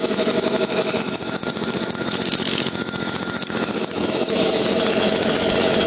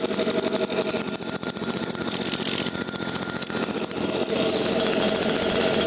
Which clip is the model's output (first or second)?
first